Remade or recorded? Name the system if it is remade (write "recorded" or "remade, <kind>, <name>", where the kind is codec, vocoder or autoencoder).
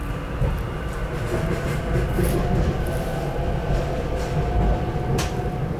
recorded